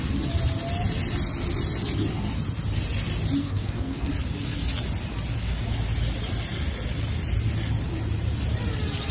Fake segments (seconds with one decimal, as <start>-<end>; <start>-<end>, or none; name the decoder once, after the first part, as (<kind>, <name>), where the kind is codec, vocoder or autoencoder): 3.4-4.1 (codec, SNAC)